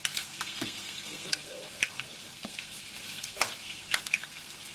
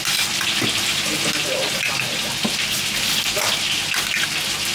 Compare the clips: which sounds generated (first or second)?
first